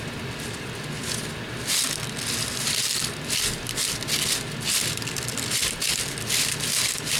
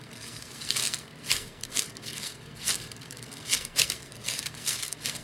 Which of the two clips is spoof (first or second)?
second